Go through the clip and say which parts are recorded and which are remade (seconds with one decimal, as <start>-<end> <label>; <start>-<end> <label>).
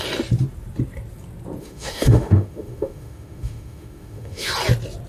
0.0-1.6 recorded; 1.6-4.5 remade; 4.5-5.1 recorded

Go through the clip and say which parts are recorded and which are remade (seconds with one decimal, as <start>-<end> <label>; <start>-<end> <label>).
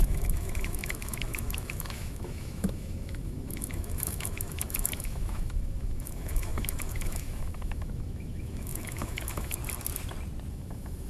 0.0-9.6 remade; 9.6-10.5 recorded; 10.5-11.1 remade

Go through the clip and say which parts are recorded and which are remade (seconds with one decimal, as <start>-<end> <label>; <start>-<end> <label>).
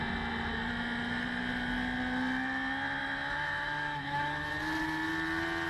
0.0-3.0 recorded; 3.0-4.5 remade; 4.5-5.7 recorded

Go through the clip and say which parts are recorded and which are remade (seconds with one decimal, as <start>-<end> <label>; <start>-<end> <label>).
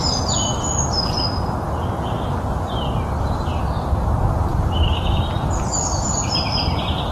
0.0-4.5 recorded; 4.5-5.2 remade; 5.2-7.1 recorded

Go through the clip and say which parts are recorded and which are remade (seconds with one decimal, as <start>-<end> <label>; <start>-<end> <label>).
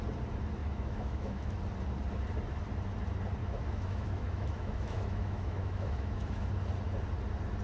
0.0-0.6 recorded; 0.6-1.6 remade; 1.6-3.4 recorded; 3.4-6.5 remade; 6.5-7.6 recorded